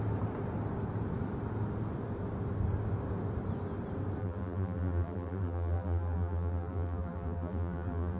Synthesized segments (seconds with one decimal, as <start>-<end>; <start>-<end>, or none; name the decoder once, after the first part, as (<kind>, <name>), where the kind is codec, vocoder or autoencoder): 4.2-8.2 (vocoder, BigVGAN v2)